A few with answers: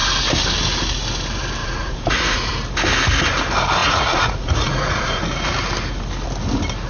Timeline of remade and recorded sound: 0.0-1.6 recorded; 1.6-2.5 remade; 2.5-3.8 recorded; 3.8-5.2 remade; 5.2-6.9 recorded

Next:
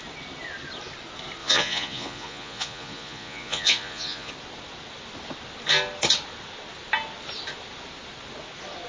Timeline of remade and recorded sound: 0.0-1.4 recorded; 1.4-4.3 remade; 4.3-8.9 recorded

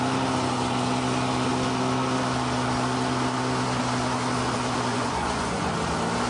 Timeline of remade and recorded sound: 0.0-4.9 recorded; 4.9-5.7 remade; 5.7-6.3 recorded

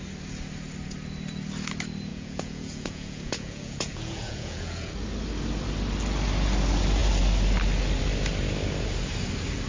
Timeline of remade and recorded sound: 0.0-2.1 recorded; 2.1-4.9 remade; 4.9-9.7 recorded

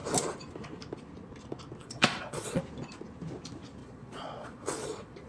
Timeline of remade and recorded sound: 0.0-1.8 recorded; 1.8-2.6 remade; 2.6-3.8 recorded; 3.8-5.3 remade